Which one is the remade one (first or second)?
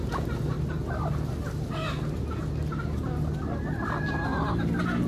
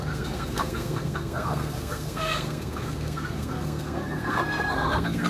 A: second